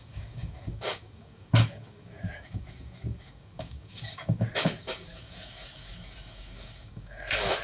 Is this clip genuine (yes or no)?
no